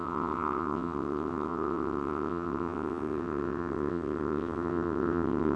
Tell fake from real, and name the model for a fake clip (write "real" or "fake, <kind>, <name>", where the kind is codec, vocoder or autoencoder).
fake, vocoder, WaveNeXt